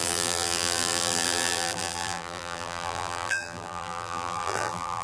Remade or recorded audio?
remade